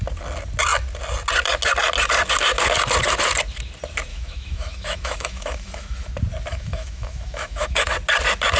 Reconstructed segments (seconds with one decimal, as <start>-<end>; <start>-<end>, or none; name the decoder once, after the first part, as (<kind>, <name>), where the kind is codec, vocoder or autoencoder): 4.1-6.1 (autoencoder, DAC-VAE); 6.5-7.9